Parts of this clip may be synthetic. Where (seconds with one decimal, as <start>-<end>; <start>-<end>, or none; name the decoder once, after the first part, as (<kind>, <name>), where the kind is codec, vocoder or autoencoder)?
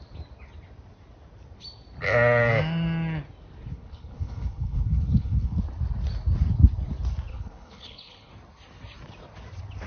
3.7-5.6 (codec, HILCodec); 7.3-8.3